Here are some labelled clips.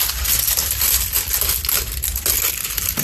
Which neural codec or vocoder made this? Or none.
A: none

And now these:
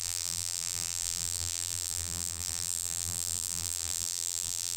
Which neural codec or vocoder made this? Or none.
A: vocoder, BigVGAN v2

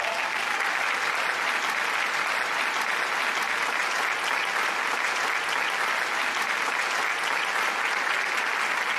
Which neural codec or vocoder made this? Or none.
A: none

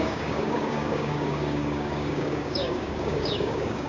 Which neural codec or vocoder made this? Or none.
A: codec, DAC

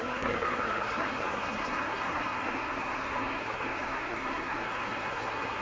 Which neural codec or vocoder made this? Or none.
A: codec, SNAC